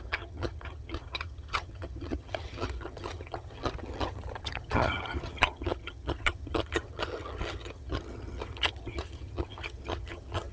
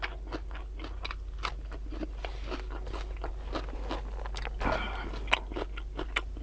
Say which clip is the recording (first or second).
second